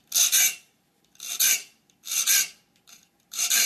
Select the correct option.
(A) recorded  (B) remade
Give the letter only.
A